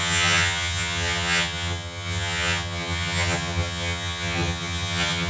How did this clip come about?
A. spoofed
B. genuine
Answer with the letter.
A